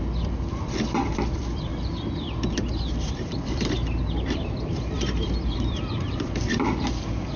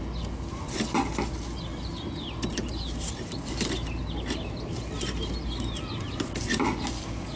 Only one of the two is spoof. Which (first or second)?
first